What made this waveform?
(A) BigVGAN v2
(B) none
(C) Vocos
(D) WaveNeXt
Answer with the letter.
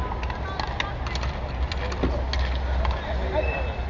B